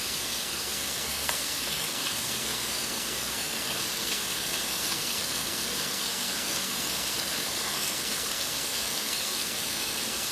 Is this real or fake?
fake